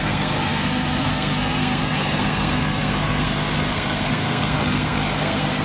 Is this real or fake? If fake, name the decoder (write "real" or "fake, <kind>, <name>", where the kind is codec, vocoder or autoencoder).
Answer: fake, codec, SNAC